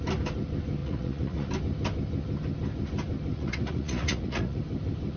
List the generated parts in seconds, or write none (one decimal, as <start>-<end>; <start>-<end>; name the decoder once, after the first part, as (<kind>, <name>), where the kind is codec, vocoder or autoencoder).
0.8-1.5 (vocoder, Vocos); 3.3-4.6